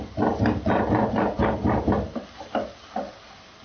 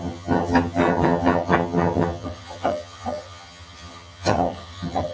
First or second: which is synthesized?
second